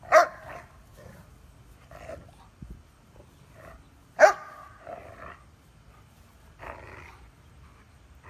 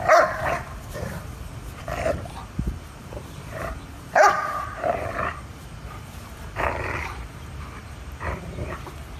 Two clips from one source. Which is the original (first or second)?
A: first